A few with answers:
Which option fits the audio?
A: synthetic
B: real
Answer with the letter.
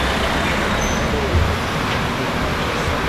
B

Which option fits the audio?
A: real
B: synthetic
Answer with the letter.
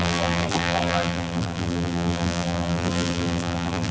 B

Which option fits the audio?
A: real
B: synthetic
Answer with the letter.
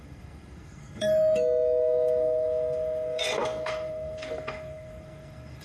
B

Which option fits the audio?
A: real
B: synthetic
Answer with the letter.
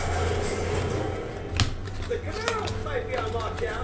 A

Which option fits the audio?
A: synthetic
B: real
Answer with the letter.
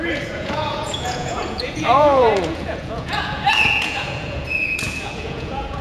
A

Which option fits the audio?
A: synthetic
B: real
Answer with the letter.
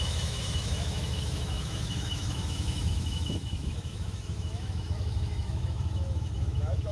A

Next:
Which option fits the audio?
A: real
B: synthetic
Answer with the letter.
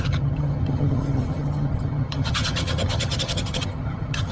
B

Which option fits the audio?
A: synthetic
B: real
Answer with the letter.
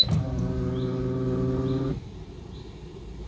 B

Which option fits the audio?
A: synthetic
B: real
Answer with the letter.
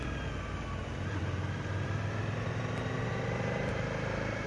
B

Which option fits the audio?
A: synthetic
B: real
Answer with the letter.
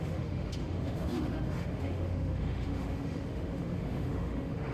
A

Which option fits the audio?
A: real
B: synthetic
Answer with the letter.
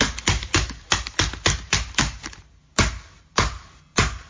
A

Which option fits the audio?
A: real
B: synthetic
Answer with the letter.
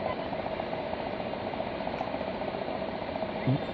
A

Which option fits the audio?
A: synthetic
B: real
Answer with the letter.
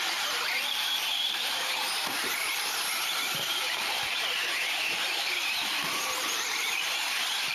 A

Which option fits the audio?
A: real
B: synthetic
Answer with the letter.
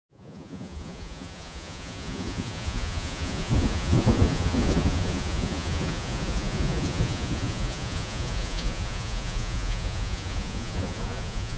B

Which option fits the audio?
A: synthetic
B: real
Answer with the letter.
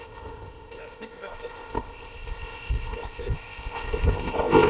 A